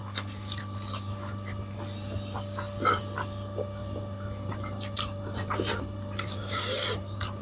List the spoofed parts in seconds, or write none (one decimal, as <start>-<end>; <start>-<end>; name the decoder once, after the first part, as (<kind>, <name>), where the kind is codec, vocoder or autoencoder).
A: 3.8-7.4 (vocoder, BigVGAN v2)